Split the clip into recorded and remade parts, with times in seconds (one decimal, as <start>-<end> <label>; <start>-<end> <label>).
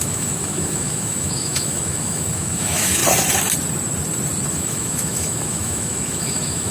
0.0-3.0 remade; 3.0-4.5 recorded; 4.5-6.7 remade